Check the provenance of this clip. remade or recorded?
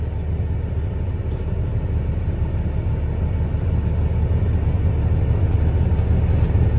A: recorded